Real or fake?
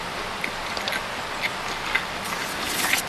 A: real